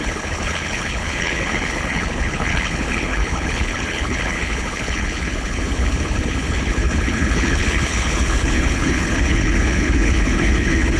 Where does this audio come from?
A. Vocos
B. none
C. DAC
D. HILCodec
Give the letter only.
D